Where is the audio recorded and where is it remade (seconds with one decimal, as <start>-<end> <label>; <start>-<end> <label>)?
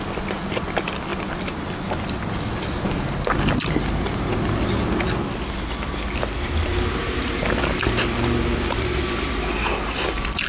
0.0-10.5 recorded